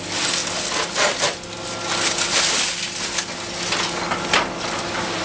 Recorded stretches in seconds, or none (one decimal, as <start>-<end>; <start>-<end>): 0.0-5.2